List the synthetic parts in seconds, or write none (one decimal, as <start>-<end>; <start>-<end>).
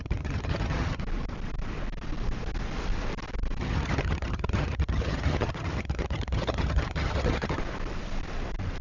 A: 0.0-1.0; 3.6-7.6